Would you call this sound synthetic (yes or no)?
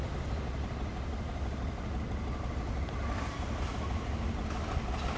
no